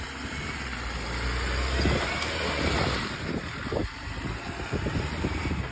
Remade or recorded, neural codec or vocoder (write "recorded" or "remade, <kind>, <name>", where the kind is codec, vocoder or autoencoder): recorded